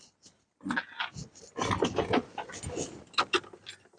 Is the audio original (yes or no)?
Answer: yes